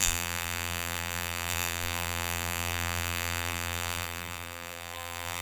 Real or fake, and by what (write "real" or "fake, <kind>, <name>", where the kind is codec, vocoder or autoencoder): fake, vocoder, BigVGAN v2